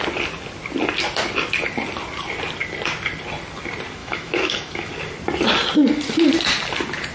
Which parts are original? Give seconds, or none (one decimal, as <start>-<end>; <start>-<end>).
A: 0.0-4.0; 4.9-7.1